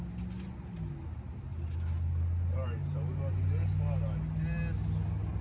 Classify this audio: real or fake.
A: real